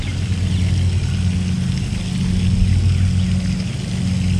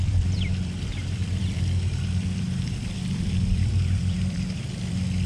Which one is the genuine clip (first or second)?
first